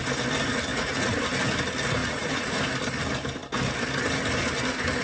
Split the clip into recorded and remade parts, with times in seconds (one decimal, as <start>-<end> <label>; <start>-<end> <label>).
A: 0.0-0.7 recorded; 0.7-1.2 remade; 1.2-2.0 recorded; 2.0-2.6 remade; 2.6-5.0 recorded